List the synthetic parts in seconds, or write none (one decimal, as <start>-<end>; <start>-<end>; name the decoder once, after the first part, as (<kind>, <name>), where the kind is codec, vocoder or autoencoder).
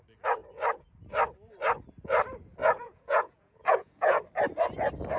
2.6-4.2 (vocoder, Vocos)